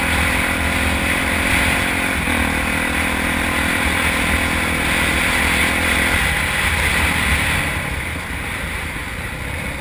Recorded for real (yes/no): yes